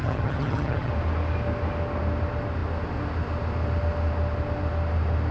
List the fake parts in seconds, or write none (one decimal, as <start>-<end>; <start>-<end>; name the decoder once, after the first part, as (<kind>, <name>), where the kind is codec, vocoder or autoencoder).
0.0-0.9 (vocoder, HiFi-GAN)